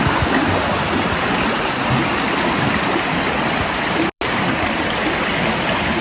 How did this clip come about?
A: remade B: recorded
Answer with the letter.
B